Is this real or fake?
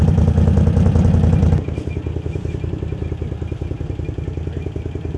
real